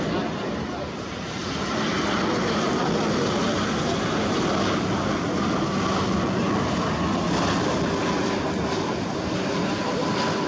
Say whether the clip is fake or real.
real